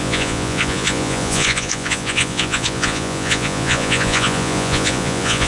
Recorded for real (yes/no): no